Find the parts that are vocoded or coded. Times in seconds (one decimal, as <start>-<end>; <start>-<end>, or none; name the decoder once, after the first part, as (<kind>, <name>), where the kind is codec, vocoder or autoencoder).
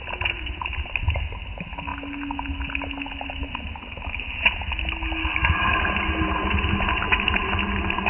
5.2-5.9 (codec, DAC)